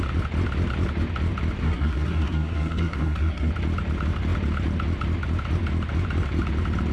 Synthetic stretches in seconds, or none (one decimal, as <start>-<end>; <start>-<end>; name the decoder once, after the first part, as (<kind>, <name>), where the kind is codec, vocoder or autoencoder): 1.6-3.5 (codec, SNAC)